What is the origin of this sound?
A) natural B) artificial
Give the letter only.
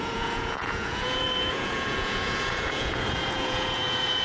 B